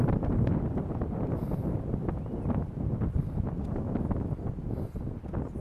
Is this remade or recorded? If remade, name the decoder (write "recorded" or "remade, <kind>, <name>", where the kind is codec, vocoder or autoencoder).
recorded